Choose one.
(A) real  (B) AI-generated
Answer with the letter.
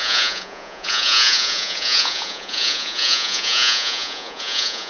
B